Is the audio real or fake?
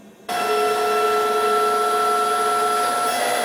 real